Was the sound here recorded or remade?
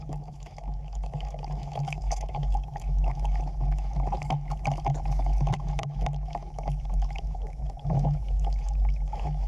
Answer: remade